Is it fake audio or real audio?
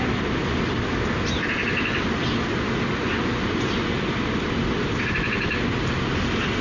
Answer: real